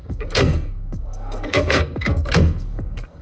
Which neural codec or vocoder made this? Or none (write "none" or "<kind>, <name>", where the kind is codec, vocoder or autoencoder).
codec, SNAC